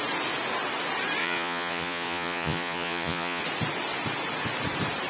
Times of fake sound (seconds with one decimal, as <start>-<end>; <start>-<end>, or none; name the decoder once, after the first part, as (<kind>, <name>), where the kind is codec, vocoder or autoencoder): 1.2-3.4 (vocoder, Vocos)